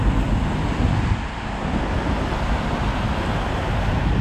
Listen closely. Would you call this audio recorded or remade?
recorded